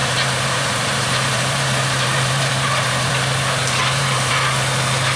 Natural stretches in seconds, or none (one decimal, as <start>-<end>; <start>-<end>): 3.1-3.6; 4.3-5.2